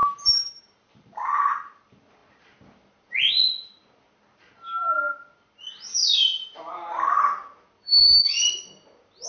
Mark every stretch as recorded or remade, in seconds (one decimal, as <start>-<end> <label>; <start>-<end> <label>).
0.0-1.4 remade; 1.4-6.0 recorded; 6.0-7.2 remade; 7.2-9.3 recorded